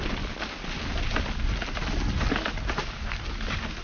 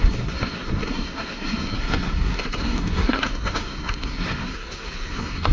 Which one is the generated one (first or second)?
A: second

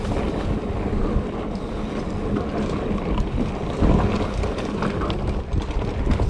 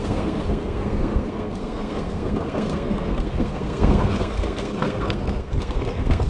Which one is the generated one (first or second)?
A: second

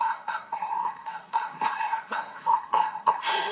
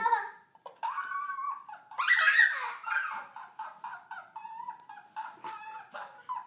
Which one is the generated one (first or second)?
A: first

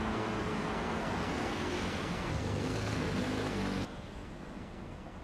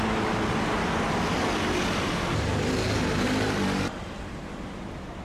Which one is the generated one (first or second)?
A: first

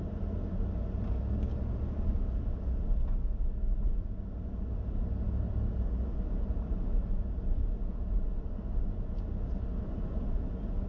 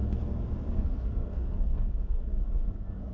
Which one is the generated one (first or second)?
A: second